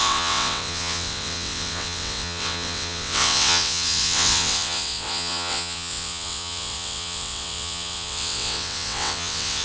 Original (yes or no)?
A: no